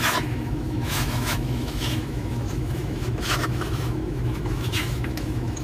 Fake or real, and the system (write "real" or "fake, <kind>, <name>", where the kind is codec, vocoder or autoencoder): fake, autoencoder, DAC-VAE